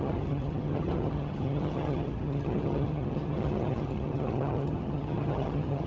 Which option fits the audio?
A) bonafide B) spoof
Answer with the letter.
B